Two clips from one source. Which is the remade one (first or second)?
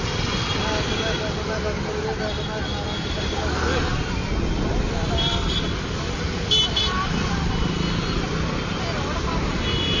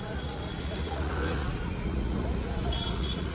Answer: second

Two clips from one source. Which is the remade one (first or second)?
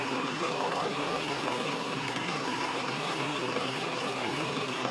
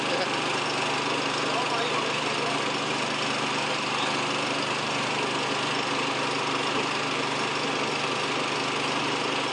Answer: first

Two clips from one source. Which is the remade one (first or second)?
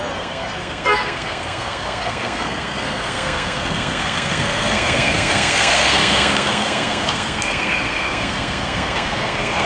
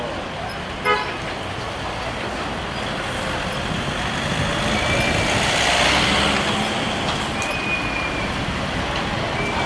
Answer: first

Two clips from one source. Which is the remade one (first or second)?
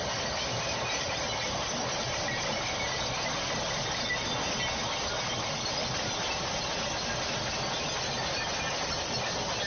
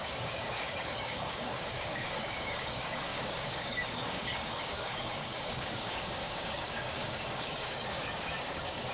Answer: second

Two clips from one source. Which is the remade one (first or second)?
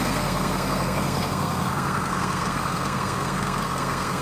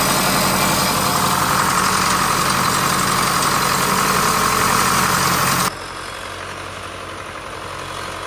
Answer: first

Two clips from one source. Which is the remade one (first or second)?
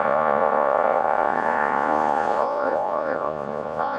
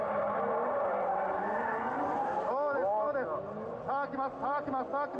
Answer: first